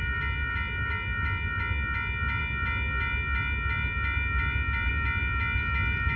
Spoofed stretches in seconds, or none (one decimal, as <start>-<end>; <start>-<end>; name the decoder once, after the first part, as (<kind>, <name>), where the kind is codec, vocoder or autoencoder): none